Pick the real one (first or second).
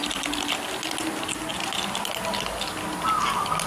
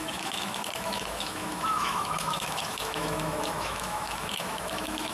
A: first